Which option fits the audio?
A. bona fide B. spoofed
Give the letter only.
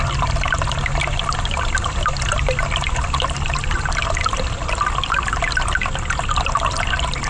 A